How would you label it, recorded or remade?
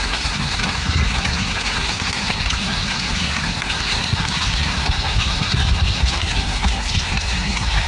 remade